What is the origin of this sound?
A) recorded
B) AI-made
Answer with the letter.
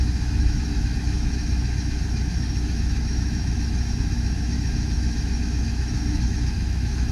B